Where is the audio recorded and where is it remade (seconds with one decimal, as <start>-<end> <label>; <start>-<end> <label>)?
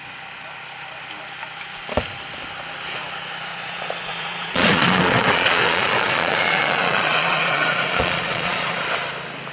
0.0-3.5 recorded; 3.5-8.8 remade; 8.8-9.5 recorded